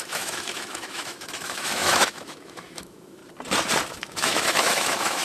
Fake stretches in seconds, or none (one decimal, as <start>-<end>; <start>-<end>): 0.0-3.2; 3.9-5.2